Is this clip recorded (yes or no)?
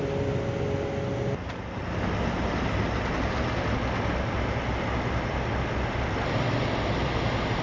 yes